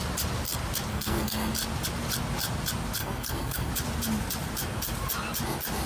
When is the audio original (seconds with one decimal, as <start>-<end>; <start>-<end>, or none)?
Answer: 0.0-0.9; 1.5-3.0; 3.7-5.9